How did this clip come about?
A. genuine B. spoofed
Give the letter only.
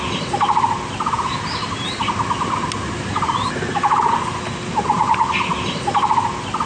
A